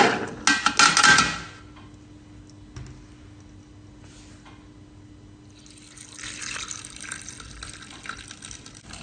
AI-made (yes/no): no